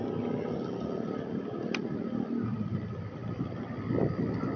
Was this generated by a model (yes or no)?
no